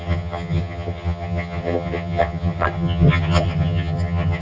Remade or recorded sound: remade